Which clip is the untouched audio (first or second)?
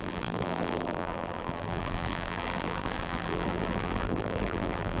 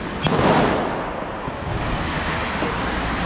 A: second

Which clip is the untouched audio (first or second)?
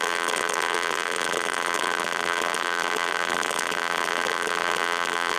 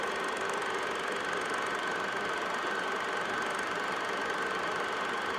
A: second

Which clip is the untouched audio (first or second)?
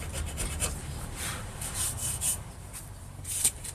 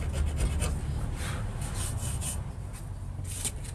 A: second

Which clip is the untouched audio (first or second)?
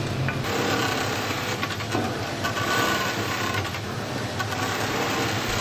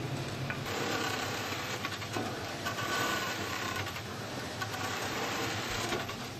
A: first